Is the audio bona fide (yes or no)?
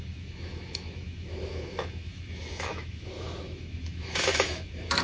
no